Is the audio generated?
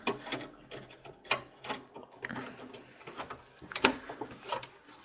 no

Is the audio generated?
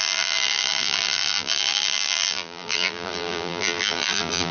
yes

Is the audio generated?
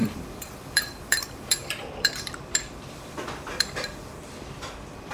yes